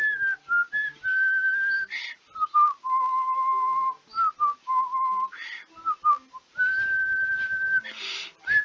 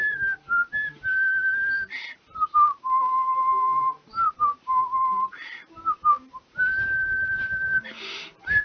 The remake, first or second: second